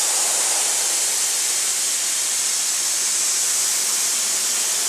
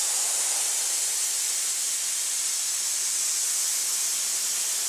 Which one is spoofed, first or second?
first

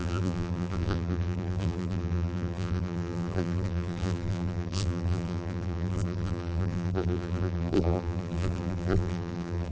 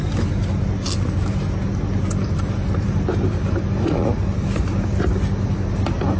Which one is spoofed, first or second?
first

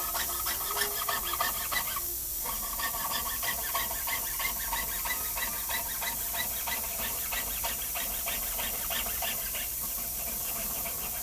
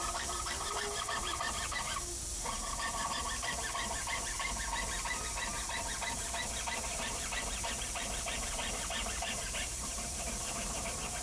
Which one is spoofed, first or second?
second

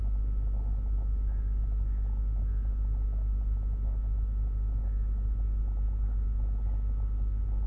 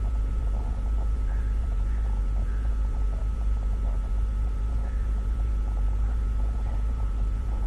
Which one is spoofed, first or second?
second